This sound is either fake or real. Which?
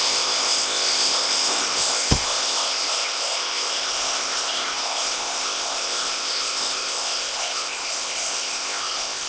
fake